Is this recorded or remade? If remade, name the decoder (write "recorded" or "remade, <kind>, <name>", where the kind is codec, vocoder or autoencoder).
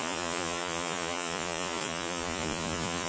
remade, vocoder, Vocos